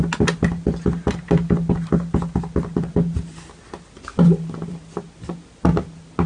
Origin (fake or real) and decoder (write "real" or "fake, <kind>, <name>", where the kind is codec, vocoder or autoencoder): real